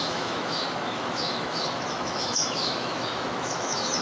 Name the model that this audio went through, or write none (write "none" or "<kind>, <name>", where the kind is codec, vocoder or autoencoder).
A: autoencoder, DAC-VAE